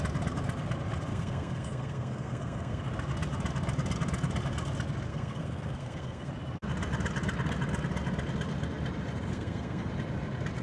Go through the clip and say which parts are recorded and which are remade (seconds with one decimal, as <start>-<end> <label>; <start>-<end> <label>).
0.0-1.1 recorded; 1.1-2.8 remade; 2.8-5.1 recorded; 5.1-6.3 remade; 6.3-9.3 recorded; 9.3-9.9 remade; 9.9-10.6 recorded